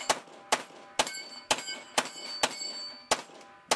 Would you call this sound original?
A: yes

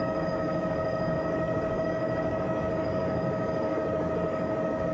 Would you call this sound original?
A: no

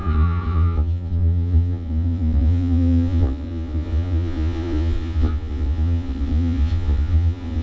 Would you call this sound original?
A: no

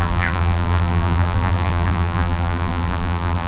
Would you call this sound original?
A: no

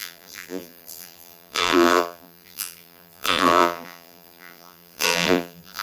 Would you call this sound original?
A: no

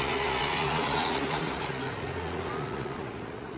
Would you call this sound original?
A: no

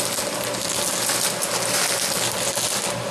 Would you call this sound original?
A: yes